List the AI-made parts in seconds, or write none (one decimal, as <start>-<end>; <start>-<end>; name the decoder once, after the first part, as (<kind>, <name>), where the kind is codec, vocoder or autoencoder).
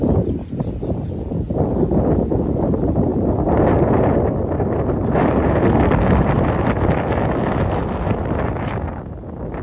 none